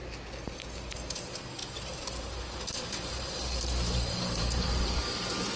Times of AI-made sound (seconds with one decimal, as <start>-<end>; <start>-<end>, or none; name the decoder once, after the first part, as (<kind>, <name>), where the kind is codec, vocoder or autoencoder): 1.6-5.0 (vocoder, BigVGAN v2)